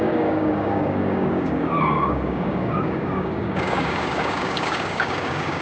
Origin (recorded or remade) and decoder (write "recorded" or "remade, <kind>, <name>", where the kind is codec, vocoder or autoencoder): remade, codec, DAC